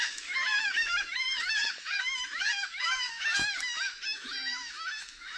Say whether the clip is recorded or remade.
remade